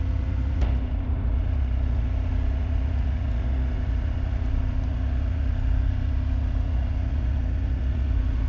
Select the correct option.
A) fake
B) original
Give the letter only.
A